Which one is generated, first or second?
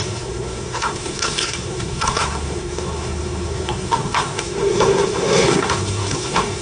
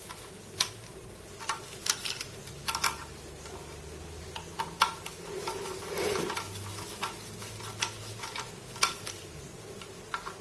first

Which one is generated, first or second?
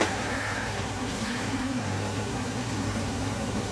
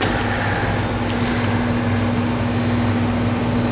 first